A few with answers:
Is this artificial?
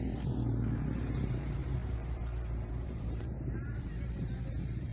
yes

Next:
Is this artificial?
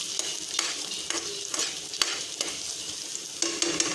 no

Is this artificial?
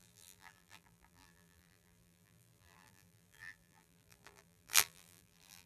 yes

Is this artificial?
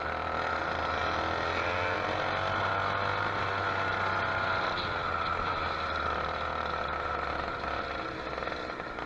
no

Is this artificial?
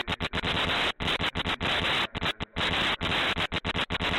no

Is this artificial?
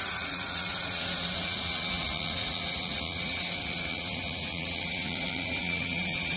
yes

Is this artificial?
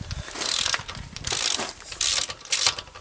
yes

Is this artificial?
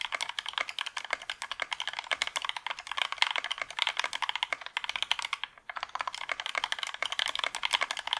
no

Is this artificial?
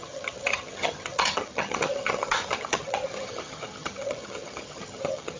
yes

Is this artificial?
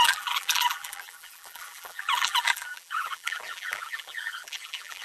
yes